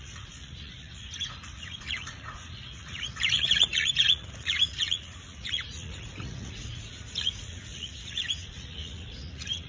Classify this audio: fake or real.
fake